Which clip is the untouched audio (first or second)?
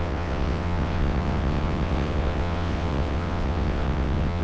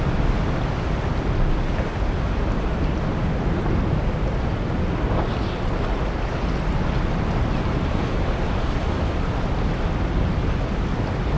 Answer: second